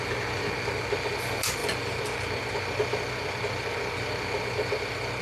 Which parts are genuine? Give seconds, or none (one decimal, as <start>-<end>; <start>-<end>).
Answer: 0.0-5.2